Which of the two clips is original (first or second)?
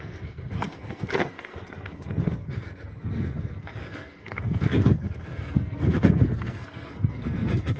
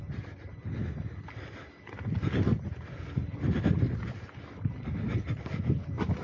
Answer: second